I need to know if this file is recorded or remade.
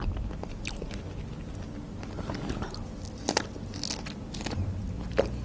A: recorded